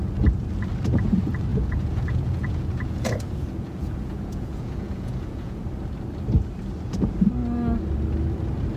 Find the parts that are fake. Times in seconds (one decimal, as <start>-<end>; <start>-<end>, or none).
1.5-5.6